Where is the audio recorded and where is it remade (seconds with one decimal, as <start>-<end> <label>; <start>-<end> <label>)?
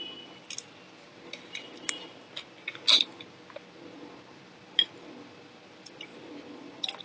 0.0-7.0 recorded